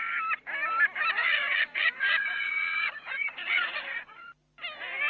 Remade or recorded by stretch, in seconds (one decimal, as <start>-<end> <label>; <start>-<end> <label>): 0.0-1.2 recorded; 1.2-4.3 remade; 4.3-5.1 recorded